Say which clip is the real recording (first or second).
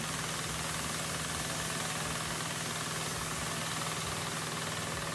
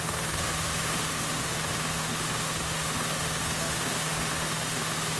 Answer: first